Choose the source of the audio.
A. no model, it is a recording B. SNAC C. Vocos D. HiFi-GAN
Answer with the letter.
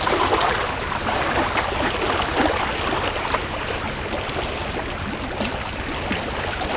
A